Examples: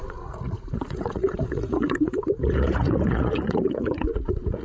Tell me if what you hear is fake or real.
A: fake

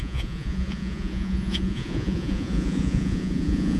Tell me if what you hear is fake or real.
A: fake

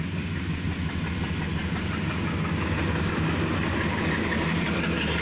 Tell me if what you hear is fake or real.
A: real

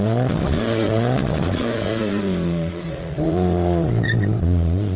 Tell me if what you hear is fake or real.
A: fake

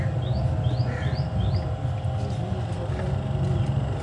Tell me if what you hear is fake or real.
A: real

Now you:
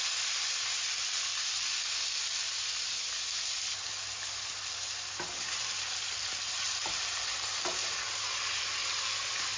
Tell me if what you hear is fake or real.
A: real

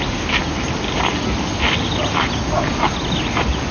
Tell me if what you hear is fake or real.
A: real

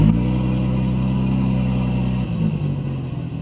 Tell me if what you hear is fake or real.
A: real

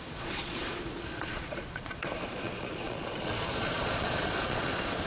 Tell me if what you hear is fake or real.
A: fake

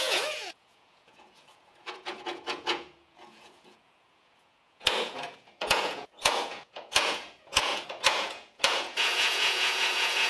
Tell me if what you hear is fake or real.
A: fake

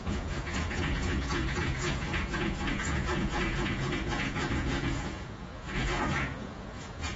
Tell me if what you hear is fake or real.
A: fake